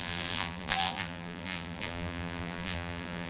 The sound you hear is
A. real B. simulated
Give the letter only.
B